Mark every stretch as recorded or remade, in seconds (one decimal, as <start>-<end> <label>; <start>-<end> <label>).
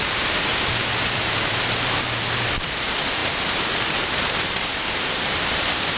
0.0-6.0 remade